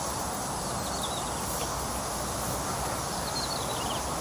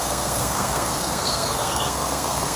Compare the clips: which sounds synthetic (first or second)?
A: second